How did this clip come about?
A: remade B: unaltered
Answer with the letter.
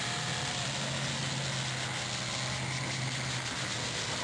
B